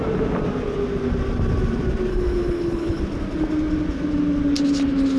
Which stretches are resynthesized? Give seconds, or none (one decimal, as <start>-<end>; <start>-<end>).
2.1-3.0